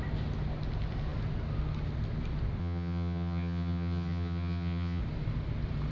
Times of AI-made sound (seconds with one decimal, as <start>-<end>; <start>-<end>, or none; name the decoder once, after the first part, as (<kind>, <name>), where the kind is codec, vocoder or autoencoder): 2.6-5.0 (vocoder, HiFi-GAN)